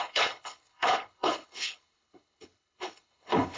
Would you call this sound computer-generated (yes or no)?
yes